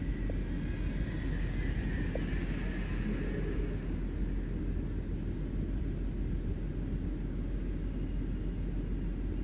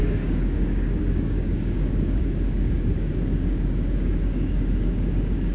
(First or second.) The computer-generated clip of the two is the second